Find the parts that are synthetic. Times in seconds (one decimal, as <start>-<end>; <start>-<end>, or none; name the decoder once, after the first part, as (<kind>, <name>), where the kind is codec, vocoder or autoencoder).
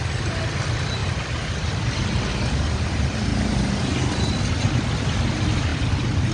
none